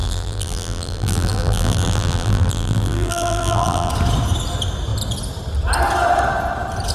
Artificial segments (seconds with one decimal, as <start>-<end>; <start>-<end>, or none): 0.0-3.9